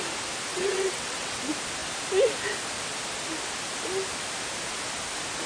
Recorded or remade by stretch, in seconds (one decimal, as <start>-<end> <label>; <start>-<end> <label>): 0.0-0.5 recorded; 0.5-1.4 remade; 1.4-5.5 recorded